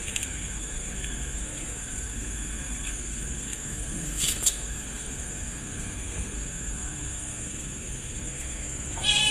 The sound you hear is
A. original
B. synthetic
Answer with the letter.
B